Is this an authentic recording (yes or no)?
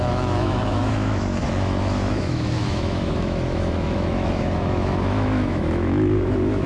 no